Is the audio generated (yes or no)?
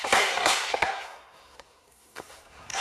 yes